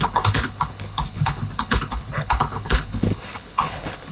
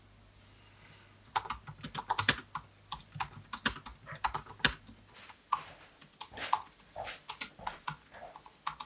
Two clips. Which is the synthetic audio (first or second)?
first